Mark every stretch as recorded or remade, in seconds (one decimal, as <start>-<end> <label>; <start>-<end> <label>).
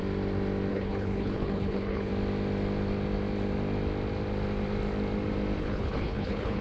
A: 0.0-0.7 recorded; 0.7-2.1 remade; 2.1-5.6 recorded; 5.6-6.6 remade